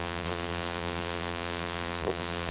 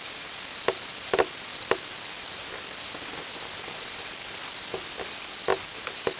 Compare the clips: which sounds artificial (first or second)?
first